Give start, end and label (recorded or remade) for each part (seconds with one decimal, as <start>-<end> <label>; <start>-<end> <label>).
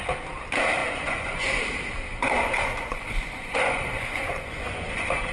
0.0-0.8 recorded; 0.8-1.6 remade; 1.6-2.1 recorded; 2.1-5.3 remade